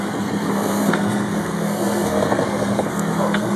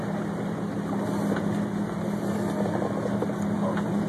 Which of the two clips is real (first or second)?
second